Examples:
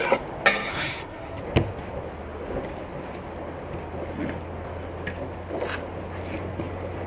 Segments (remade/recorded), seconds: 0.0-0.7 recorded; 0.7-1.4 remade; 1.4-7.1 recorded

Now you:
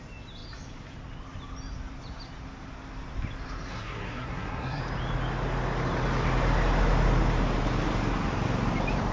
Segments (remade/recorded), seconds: 0.0-3.7 recorded; 3.7-4.8 remade; 4.8-9.1 recorded

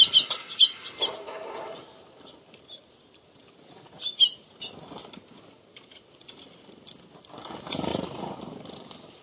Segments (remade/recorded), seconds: 0.0-7.9 recorded; 7.9-8.4 remade; 8.4-9.2 recorded

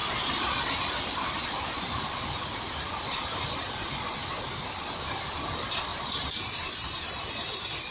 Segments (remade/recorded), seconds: 0.0-7.9 recorded

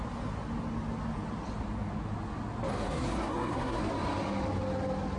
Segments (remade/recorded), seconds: 0.0-2.7 recorded; 2.7-3.8 remade; 3.8-5.2 recorded